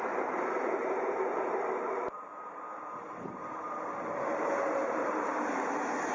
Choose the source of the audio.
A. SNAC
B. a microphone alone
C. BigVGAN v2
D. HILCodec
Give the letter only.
C